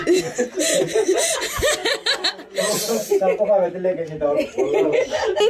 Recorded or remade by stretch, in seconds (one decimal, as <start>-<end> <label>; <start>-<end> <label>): 0.0-5.5 recorded